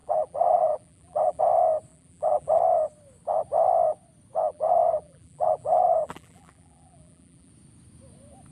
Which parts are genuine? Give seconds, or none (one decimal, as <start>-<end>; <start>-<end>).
1.4-1.9; 2.6-4.5; 7.5-8.5